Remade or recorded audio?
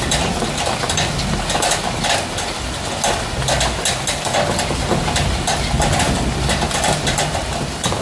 recorded